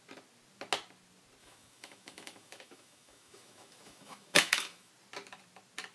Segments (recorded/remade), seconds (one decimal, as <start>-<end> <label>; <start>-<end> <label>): 0.0-1.4 recorded; 1.4-4.9 remade; 4.9-5.9 recorded